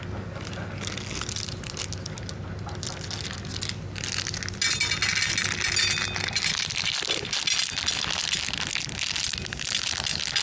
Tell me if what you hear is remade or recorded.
recorded